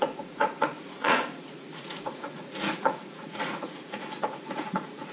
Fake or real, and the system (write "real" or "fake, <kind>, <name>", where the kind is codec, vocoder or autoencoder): fake, vocoder, Vocos